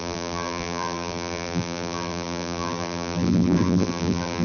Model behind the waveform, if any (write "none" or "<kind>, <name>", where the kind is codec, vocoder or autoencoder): vocoder, BigVGAN v2